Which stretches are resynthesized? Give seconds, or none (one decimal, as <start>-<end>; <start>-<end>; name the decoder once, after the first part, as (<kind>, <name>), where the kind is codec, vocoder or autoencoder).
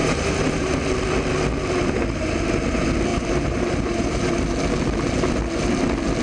0.0-0.8 (vocoder, BigVGAN v2); 3.1-4.3